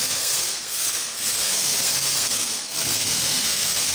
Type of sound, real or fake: fake